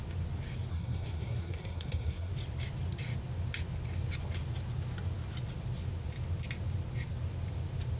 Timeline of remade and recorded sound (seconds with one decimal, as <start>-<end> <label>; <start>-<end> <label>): 0.0-0.7 recorded; 0.7-2.3 remade; 2.3-8.0 recorded